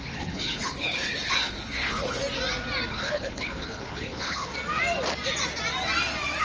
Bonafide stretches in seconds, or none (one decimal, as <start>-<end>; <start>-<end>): 2.2-2.9; 4.5-6.4